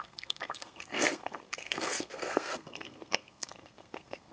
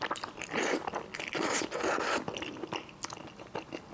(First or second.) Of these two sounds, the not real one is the first